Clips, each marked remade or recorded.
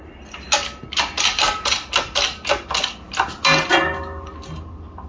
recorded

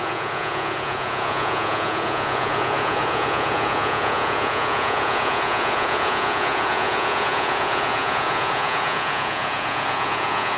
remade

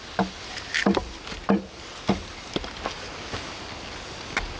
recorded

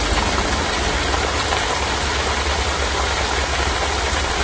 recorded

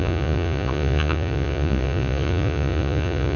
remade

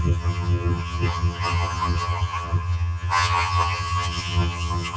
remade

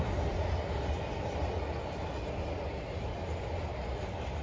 recorded